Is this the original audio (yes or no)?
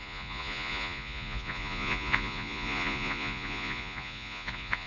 no